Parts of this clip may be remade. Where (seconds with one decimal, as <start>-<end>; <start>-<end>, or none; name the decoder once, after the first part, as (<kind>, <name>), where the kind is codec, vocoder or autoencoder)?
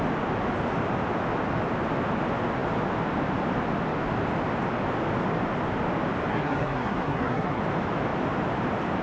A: 6.3-7.6 (codec, SNAC)